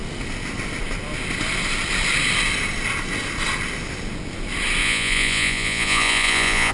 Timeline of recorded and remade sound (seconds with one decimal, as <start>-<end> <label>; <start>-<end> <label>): 0.0-4.8 recorded; 4.8-6.7 remade